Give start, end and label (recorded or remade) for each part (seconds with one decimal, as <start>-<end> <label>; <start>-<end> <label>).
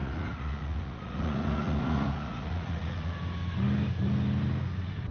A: 0.0-3.1 remade; 3.1-5.1 recorded